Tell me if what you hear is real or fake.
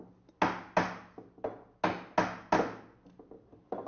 real